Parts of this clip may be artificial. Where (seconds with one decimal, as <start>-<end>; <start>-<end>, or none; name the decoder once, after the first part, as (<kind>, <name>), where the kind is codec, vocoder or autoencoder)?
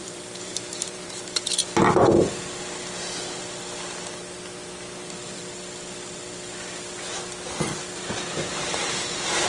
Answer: 0.0-1.4 (vocoder, BigVGAN v2)